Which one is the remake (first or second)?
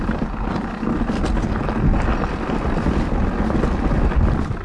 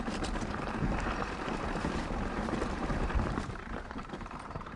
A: second